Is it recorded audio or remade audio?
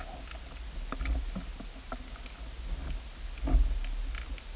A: recorded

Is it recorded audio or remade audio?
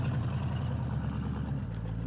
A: recorded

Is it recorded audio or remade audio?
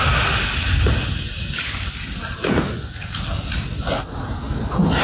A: recorded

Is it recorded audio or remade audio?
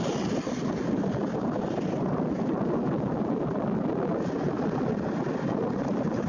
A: recorded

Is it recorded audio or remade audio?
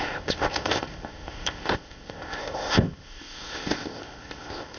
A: remade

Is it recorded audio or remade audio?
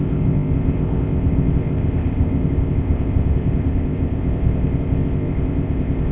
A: remade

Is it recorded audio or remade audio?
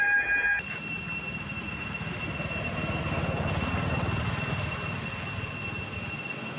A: recorded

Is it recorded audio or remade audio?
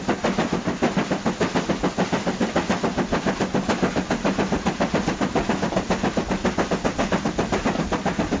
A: recorded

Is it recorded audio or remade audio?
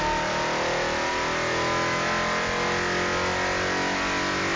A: recorded